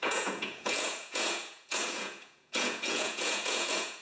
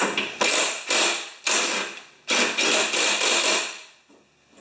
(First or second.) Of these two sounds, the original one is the second